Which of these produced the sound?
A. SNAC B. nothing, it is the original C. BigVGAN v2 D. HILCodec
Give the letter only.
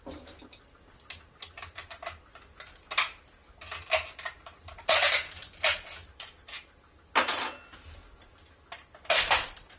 B